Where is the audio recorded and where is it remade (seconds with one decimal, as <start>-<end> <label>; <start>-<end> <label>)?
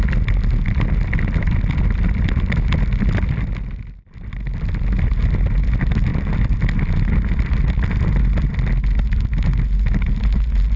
0.0-10.8 recorded